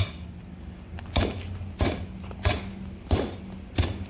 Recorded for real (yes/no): yes